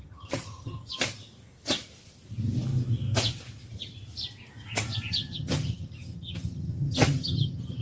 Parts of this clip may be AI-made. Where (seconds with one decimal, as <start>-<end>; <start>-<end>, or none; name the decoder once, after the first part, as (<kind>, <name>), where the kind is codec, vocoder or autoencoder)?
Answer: 0.0-0.9 (vocoder, HiFi-GAN); 5.1-7.8